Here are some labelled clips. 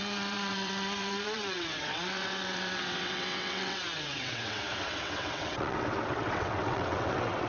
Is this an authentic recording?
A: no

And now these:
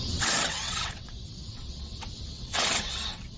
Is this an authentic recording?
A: no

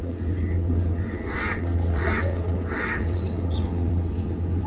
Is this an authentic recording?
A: no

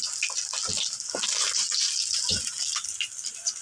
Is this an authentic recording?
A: yes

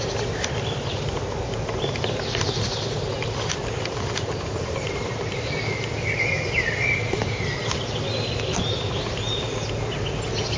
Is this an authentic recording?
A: yes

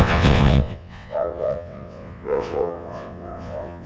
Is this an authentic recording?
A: no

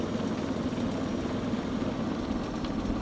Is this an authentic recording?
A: yes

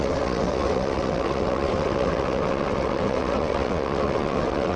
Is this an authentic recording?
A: no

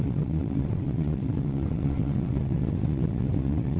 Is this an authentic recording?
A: no